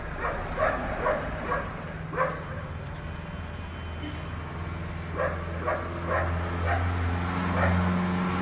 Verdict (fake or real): real